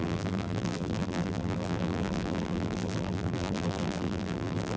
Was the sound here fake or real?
fake